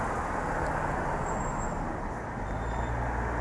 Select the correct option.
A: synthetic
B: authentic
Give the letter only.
B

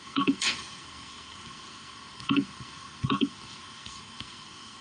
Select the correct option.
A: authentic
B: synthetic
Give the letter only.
B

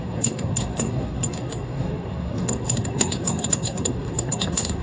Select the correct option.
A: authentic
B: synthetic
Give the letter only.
B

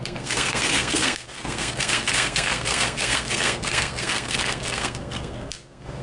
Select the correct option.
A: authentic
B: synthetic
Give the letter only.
B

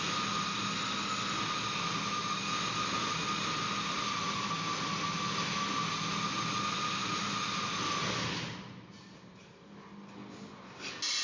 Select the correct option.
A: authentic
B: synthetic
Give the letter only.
A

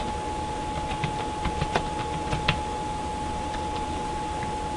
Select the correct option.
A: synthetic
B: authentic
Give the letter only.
B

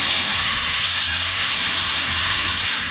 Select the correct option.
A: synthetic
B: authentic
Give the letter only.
A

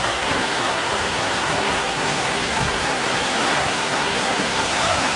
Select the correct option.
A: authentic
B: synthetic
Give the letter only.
B